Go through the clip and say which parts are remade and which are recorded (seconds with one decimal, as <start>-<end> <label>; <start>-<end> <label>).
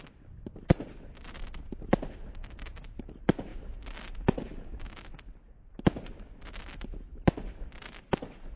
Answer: 0.0-8.6 recorded